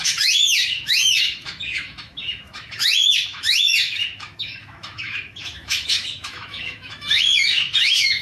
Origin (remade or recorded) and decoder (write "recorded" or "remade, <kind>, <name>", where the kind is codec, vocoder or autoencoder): remade, autoencoder, DAC-VAE